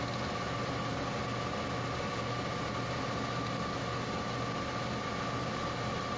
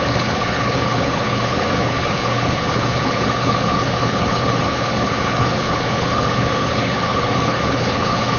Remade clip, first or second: second